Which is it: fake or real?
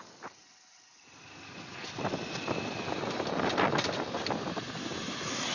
real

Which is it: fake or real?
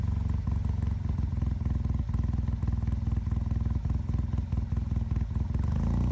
real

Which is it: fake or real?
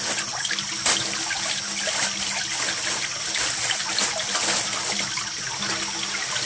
real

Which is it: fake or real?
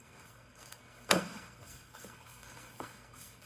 fake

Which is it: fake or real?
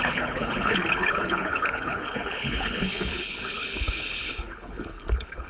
fake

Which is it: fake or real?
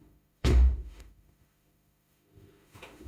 fake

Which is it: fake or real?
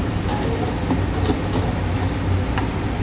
real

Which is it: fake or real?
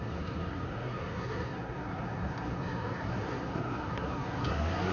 fake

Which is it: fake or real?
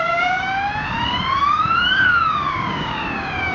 fake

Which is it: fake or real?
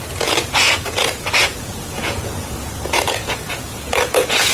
fake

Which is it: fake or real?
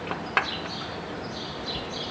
real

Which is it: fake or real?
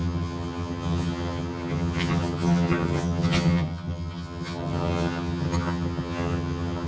fake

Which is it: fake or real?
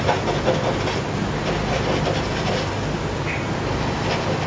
real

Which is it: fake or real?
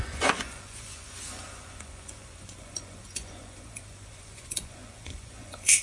fake